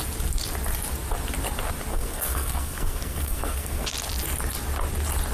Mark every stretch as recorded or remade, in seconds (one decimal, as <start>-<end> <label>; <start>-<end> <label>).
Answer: 0.0-1.9 recorded; 1.9-3.9 remade; 3.9-5.3 recorded